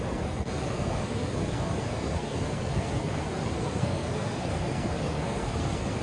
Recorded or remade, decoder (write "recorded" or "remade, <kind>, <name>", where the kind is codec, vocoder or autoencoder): remade, codec, SNAC